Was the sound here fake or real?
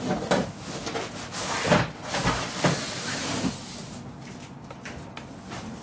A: real